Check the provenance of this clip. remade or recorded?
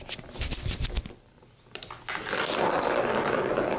recorded